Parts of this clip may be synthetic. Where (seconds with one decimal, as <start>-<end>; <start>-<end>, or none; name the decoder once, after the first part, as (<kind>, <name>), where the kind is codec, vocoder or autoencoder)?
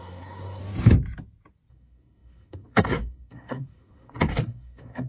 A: 0.0-0.6 (codec, SNAC); 1.7-5.1